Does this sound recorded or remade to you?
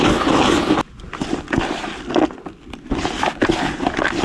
recorded